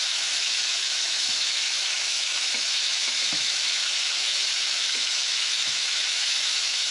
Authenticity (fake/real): fake